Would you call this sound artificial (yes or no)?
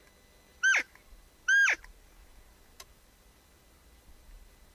no